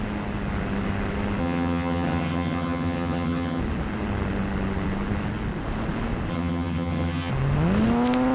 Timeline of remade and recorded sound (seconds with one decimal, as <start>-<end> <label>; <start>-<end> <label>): 0.0-1.4 recorded; 1.4-3.6 remade; 3.6-6.3 recorded; 6.3-7.3 remade; 7.3-8.3 recorded